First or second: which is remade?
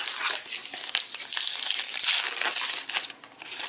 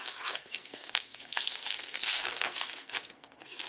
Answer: second